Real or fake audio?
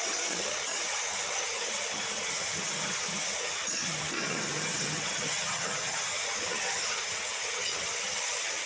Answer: fake